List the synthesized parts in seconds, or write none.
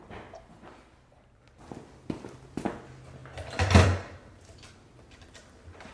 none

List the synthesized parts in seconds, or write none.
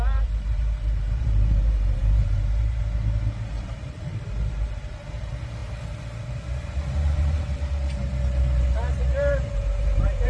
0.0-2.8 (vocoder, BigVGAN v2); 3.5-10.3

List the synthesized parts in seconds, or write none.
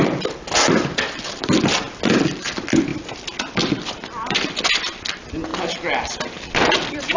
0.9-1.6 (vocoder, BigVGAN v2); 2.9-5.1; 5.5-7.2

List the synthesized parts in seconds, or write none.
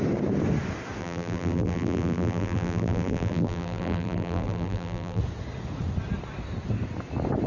1.0-5.2 (vocoder, BigVGAN v2)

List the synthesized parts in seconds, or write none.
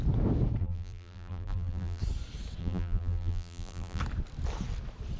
0.6-2.0 (vocoder, BigVGAN v2); 2.6-4.0